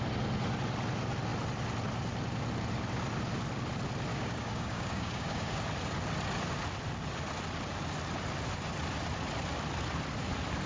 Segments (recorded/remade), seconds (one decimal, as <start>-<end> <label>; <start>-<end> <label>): 0.0-4.1 recorded; 4.1-5.6 remade; 5.6-10.7 recorded